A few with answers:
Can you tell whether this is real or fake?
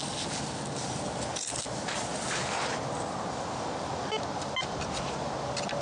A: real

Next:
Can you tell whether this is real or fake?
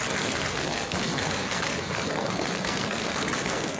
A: fake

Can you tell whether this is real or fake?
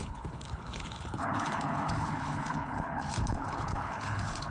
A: fake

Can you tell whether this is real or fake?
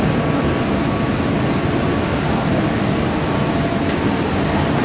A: real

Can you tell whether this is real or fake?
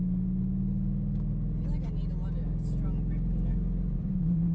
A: real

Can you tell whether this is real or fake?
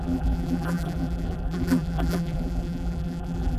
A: fake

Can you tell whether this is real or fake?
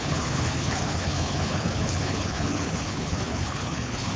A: fake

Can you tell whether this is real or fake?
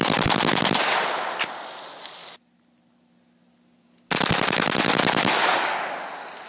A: real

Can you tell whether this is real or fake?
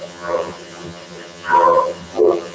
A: fake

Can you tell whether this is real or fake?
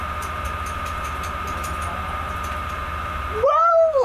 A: fake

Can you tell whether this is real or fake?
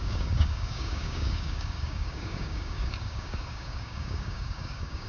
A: fake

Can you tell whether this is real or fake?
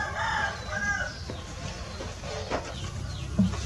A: real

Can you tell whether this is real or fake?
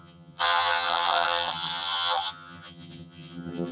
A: fake